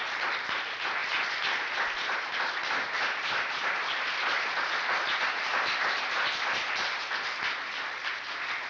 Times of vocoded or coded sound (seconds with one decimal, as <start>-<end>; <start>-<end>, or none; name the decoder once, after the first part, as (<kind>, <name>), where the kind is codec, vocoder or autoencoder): 1.0-4.5 (vocoder, BigVGAN v2)